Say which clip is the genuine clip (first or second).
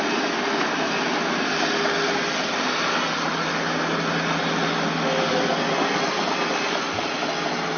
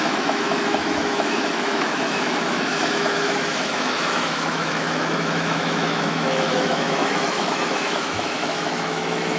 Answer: first